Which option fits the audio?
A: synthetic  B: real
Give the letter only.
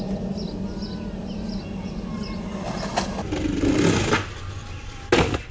B